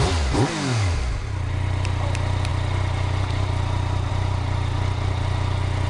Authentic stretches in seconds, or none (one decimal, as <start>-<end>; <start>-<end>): 0.0-5.9

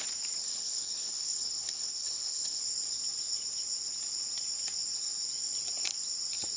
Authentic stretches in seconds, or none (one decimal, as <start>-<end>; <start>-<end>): 0.0-0.4; 2.6-6.6

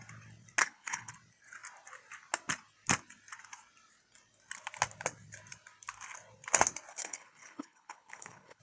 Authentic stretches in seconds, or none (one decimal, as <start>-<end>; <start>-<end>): 0.0-0.6; 1.1-6.9

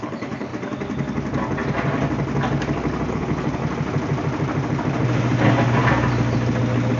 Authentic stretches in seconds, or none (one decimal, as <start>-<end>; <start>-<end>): 0.5-3.1; 3.6-7.0

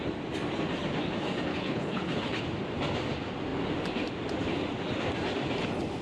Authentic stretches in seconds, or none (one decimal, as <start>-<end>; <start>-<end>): 0.0-1.5; 2.4-6.0